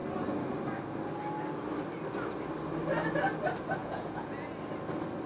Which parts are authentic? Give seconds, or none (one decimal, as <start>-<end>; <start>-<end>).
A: 0.0-3.8; 4.5-5.3

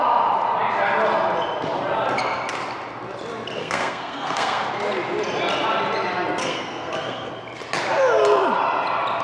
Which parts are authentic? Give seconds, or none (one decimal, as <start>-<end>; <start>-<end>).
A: 0.0-3.6; 4.7-6.4; 7.3-9.2

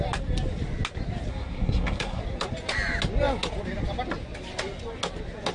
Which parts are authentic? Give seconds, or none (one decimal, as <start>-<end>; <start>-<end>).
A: 0.0-1.3; 2.2-5.5

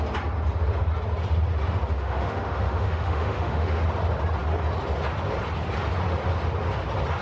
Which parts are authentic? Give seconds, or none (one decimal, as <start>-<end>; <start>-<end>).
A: 0.0-1.9; 3.8-7.2

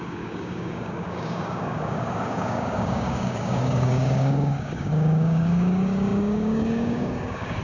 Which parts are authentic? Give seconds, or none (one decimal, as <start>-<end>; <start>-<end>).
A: none